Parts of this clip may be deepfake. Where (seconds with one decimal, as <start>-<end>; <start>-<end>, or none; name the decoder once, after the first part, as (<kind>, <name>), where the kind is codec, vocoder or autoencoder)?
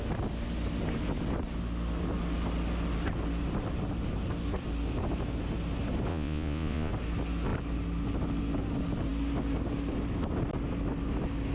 6.1-6.9 (vocoder, Vocos)